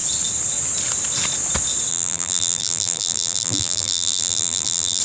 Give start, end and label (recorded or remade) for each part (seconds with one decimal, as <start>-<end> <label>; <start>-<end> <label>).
0.0-1.9 recorded; 1.9-5.0 remade